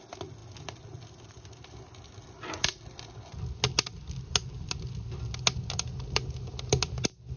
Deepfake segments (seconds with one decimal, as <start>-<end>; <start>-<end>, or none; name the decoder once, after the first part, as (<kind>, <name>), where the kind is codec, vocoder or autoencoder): none